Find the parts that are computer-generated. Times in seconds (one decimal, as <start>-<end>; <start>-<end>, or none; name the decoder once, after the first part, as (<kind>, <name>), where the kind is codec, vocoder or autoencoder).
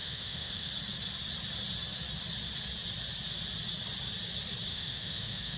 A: 0.0-0.7 (autoencoder, DAC-VAE); 4.7-5.6